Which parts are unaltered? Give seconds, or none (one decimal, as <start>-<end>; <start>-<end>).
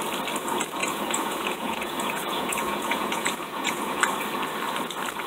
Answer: 0.0-0.8; 4.0-5.3